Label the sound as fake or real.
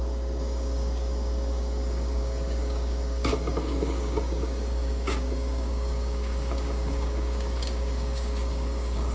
fake